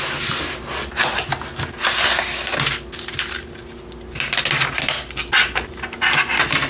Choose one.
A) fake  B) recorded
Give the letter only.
B